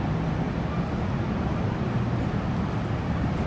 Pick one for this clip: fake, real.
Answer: real